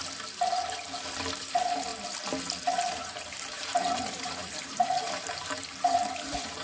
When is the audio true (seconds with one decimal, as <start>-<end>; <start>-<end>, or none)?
0.0-1.4; 1.9-2.9